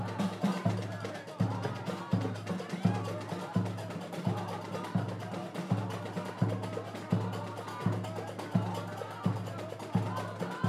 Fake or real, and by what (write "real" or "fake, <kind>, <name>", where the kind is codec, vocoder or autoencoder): real